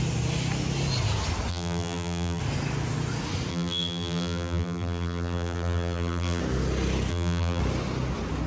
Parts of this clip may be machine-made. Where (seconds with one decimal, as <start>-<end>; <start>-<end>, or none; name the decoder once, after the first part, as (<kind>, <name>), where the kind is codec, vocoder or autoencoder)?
1.5-2.4 (vocoder, BigVGAN v2); 3.5-6.4; 7.1-7.6